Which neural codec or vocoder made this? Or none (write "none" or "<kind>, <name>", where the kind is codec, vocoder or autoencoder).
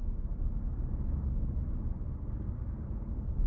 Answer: none